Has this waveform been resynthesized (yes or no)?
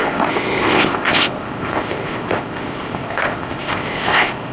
yes